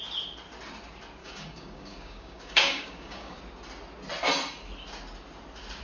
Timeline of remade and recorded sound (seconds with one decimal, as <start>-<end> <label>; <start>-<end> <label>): 0.0-1.2 recorded; 1.2-3.4 remade; 3.4-5.8 recorded